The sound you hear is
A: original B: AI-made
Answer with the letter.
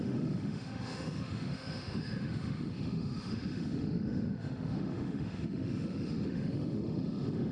B